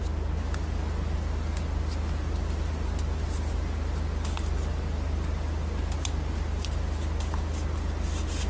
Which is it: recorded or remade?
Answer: recorded